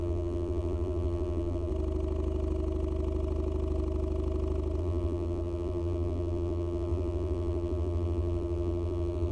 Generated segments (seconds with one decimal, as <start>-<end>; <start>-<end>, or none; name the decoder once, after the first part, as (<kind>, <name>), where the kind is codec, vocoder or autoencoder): 0.0-1.7 (vocoder, BigVGAN v2); 4.8-9.3